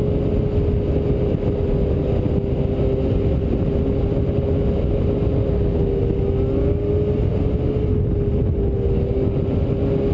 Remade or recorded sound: recorded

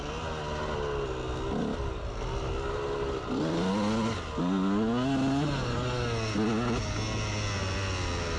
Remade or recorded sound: recorded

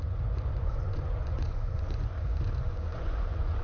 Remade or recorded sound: remade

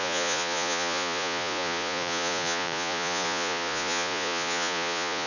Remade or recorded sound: remade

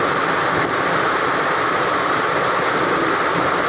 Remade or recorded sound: recorded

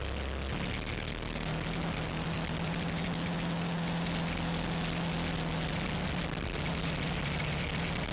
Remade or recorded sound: recorded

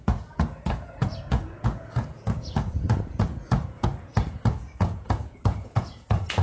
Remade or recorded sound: remade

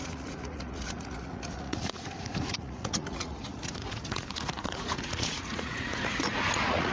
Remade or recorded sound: remade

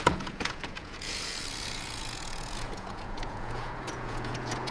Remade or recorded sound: remade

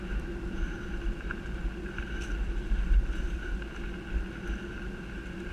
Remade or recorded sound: recorded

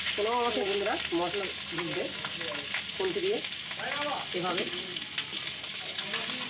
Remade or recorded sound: recorded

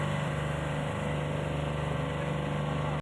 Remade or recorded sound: recorded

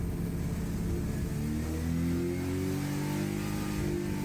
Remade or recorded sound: recorded